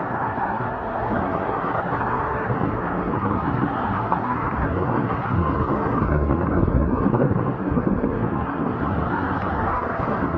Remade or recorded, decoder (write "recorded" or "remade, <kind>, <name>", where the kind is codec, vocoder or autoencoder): remade, codec, SNAC